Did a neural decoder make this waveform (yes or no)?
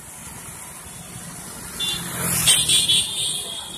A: no